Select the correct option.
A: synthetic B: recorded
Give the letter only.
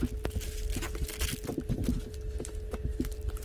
B